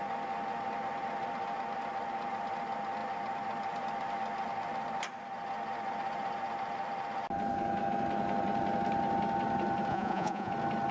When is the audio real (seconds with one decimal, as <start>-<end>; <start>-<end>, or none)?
0.0-9.9; 10.5-10.9